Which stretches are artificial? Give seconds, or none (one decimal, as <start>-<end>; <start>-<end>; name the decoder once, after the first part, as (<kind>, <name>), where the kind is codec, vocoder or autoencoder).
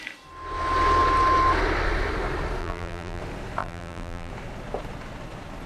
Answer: 2.6-3.2 (vocoder, BigVGAN v2); 3.6-4.3